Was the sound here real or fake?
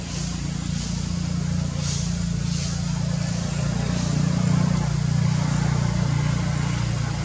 real